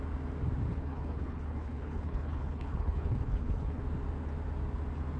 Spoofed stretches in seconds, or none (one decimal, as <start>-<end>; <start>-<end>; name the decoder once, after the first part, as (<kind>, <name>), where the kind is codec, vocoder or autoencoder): 0.7-3.8 (codec, HILCodec)